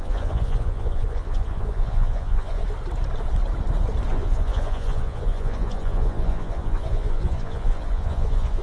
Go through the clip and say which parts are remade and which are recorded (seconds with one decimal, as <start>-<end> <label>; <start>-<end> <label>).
0.0-2.6 remade; 2.6-4.1 recorded; 4.1-8.6 remade